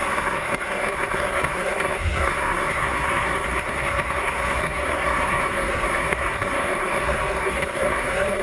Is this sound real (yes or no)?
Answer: no